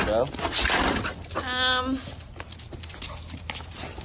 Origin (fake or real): real